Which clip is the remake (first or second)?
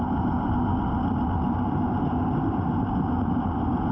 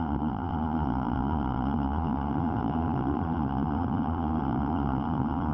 second